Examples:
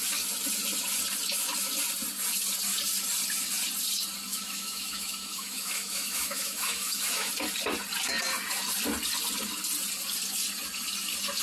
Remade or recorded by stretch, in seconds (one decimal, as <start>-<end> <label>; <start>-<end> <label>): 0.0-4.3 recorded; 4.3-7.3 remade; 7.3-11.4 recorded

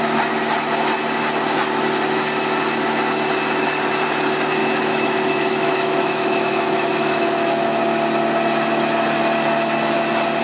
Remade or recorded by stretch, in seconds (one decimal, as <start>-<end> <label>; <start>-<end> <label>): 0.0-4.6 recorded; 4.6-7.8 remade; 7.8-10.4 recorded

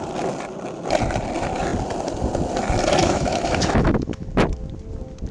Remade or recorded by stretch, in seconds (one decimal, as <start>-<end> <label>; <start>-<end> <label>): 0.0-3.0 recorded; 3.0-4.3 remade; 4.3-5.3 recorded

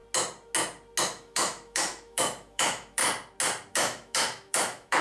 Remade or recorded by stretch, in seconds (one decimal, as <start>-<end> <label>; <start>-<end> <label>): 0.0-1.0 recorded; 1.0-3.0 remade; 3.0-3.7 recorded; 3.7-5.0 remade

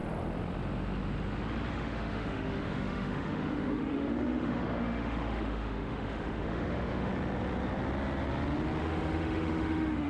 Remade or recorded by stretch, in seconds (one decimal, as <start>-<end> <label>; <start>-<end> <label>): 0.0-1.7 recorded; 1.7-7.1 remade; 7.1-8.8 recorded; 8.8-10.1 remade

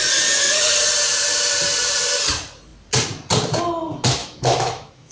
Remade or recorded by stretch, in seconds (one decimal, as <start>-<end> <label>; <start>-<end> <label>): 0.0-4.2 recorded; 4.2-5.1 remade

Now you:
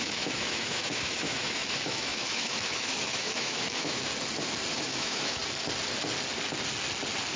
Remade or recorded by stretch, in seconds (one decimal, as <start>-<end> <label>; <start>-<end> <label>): 0.0-4.1 remade; 4.1-4.8 recorded; 4.8-5.4 remade; 5.4-7.4 recorded

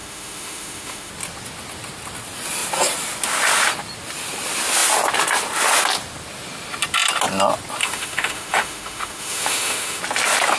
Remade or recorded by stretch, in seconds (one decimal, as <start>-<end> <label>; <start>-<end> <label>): 0.0-1.1 remade; 1.1-7.8 recorded; 7.8-10.0 remade; 10.0-10.6 recorded